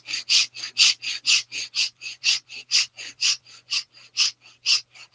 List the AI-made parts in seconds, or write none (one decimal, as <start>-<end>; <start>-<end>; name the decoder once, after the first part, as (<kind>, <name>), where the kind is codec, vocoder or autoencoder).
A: 1.1-3.9 (vocoder, Vocos)